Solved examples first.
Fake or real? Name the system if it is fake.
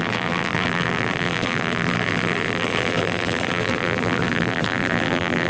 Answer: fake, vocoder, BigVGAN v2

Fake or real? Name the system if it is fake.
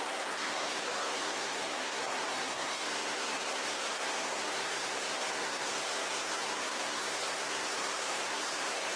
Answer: fake, codec, SNAC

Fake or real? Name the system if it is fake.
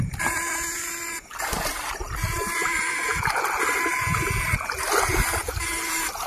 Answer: real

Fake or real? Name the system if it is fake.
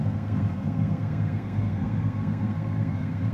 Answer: fake, codec, SNAC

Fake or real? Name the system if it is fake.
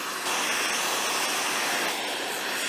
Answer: real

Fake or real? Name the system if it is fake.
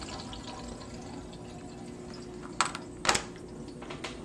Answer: real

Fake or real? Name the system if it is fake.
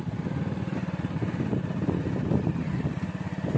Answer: real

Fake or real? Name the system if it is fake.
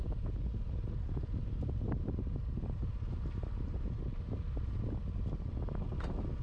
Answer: real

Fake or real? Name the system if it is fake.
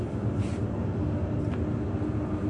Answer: real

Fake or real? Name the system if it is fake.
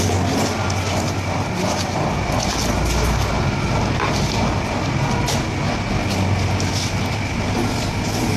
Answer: real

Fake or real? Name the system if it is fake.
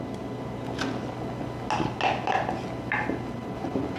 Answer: real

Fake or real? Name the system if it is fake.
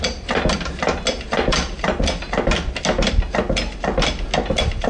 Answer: real